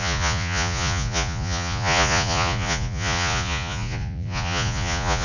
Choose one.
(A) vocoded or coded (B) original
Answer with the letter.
A